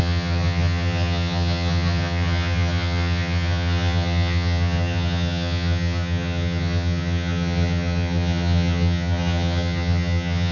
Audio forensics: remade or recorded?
remade